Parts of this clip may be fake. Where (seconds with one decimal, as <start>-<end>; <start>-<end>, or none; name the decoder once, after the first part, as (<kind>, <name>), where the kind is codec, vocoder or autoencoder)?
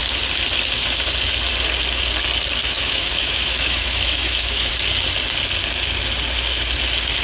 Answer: 2.6-4.7 (autoencoder, DAC-VAE)